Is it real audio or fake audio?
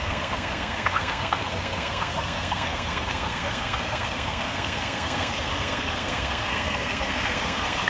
fake